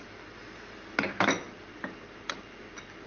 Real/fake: real